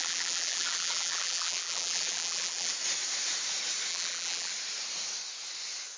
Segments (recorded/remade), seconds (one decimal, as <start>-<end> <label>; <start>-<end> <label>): 0.0-2.7 remade; 2.7-3.9 recorded; 3.9-4.5 remade; 4.5-6.0 recorded